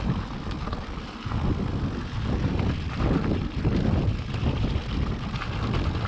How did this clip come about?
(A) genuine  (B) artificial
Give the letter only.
A